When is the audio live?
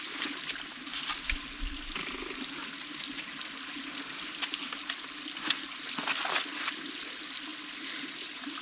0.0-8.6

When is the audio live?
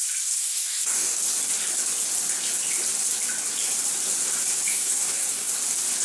0.0-0.4; 1.2-4.7; 5.5-6.0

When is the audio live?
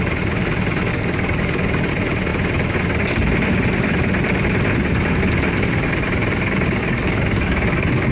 0.0-0.9; 1.9-6.8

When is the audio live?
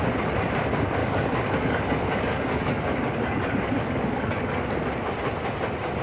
0.0-1.0; 4.6-6.0